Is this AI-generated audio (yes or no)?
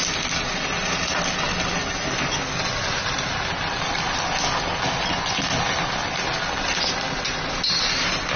no